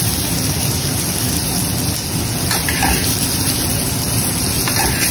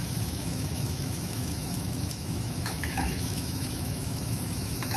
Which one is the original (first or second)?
first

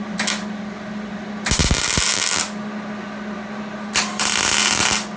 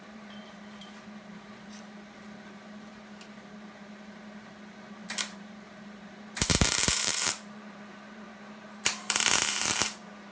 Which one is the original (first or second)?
first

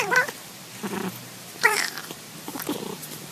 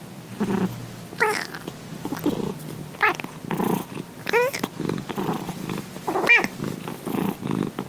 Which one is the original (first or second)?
second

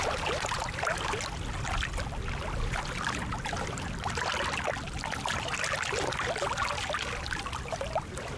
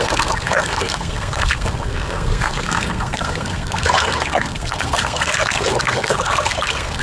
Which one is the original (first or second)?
first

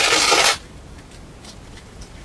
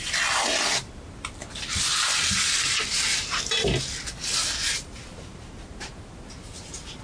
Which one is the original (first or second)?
second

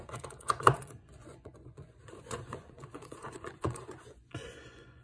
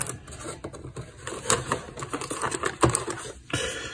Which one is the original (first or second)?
second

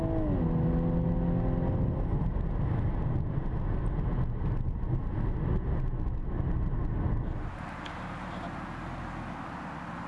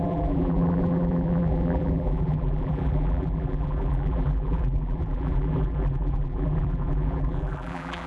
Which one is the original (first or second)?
first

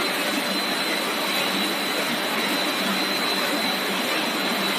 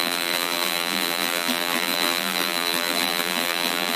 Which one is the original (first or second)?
first